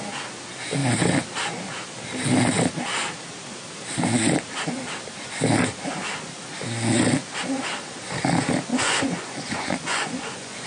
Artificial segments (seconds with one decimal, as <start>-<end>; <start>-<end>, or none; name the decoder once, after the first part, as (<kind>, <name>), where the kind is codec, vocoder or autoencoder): 8.7-10.7 (vocoder, Vocos)